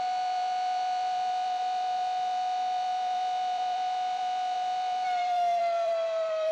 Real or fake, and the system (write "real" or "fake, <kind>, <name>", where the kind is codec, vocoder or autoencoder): fake, vocoder, BigVGAN v2